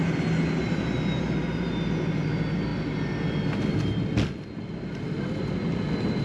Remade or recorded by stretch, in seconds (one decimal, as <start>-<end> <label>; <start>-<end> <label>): 0.0-6.2 recorded